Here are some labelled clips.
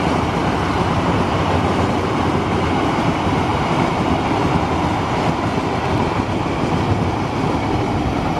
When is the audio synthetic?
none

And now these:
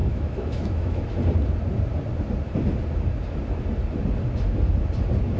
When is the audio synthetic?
0.0-1.0 (autoencoder, DAC-VAE)

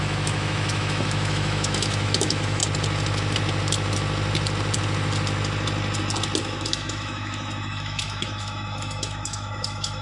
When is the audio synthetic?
0.0-2.6 (autoencoder, DAC-VAE); 6.4-10.0